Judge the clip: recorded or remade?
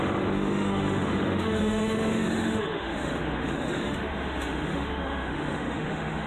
remade